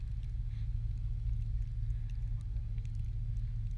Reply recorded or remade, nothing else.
recorded